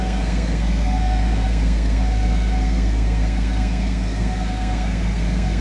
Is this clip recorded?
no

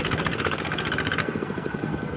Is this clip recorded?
no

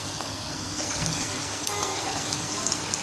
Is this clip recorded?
no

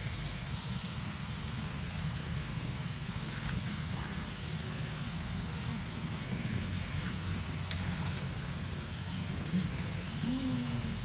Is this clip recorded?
no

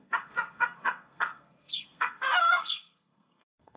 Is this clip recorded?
no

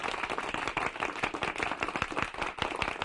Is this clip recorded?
yes